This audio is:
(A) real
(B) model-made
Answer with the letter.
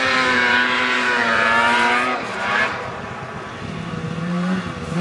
B